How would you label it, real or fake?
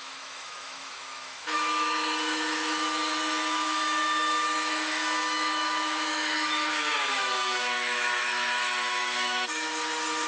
fake